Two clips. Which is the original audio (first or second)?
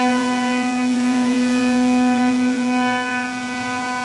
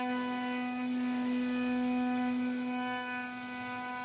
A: second